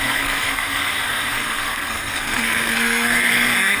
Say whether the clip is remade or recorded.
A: remade